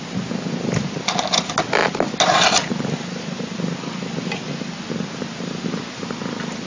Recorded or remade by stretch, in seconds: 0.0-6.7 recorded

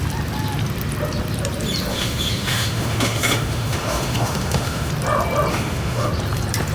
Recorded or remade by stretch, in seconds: 0.0-1.9 recorded; 1.9-4.9 remade; 4.9-5.5 recorded; 5.5-6.1 remade; 6.1-6.7 recorded

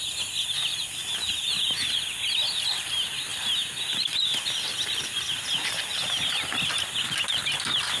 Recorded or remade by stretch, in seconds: 0.0-8.0 recorded

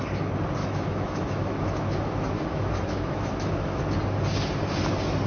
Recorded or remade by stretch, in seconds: 0.0-0.6 recorded; 0.6-3.8 remade; 3.8-5.3 recorded

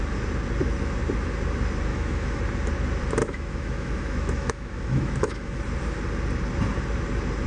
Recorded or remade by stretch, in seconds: 0.0-1.9 recorded; 1.9-2.4 remade; 2.4-3.2 recorded; 3.2-5.6 remade; 5.6-7.5 recorded

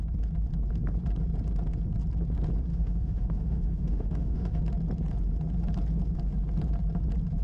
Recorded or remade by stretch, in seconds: 0.0-2.7 recorded; 2.7-4.6 remade; 4.6-7.4 recorded

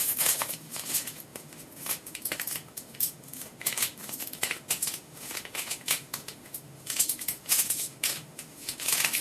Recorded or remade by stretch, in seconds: 0.0-9.2 remade